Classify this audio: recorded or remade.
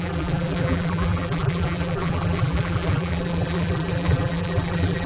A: remade